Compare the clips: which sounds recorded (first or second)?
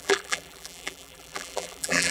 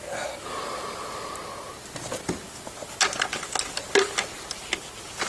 second